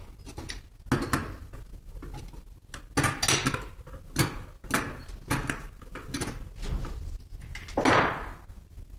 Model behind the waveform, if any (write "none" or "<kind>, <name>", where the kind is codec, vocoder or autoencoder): none